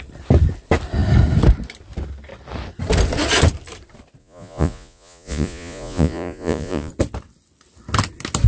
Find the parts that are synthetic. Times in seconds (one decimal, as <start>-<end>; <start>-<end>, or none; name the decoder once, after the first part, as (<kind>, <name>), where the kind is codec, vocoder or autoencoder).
4.2-6.9 (vocoder, Vocos)